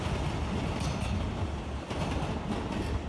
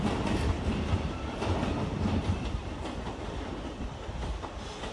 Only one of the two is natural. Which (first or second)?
first